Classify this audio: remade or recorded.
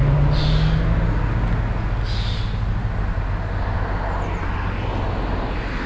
recorded